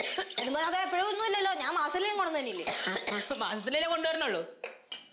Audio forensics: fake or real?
real